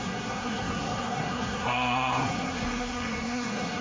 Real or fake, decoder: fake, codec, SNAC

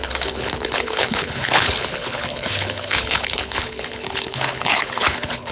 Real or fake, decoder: fake, codec, HILCodec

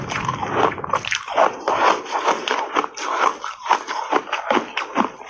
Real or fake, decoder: real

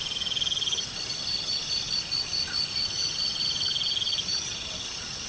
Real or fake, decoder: real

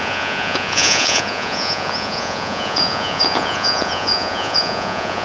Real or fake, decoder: fake, vocoder, Vocos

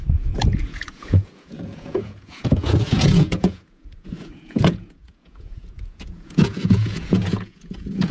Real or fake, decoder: fake, vocoder, Vocos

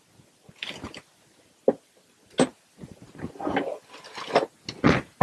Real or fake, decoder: real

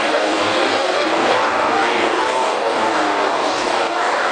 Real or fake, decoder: fake, codec, DAC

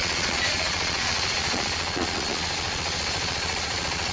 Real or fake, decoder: fake, vocoder, Vocos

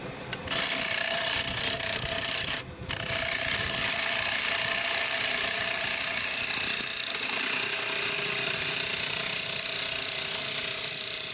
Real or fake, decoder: real